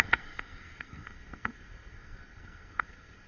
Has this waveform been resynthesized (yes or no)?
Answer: yes